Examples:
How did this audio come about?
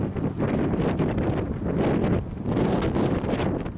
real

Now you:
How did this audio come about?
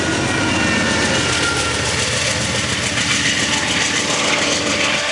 real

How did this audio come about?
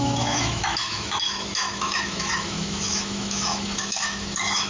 fake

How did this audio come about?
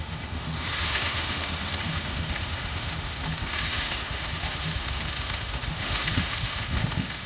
fake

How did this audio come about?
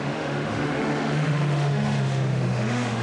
fake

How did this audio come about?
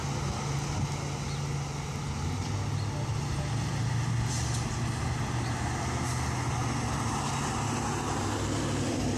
real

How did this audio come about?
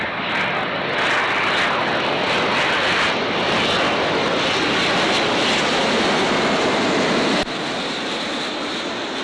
real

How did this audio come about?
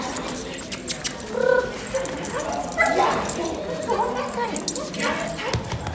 real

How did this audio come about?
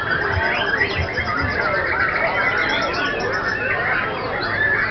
real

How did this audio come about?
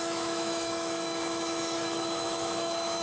fake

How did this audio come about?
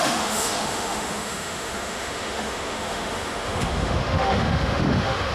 fake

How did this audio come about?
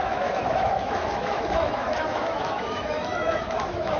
fake